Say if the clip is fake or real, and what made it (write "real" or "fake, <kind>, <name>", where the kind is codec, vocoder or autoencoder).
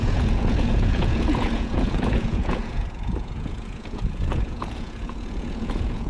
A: fake, vocoder, Vocos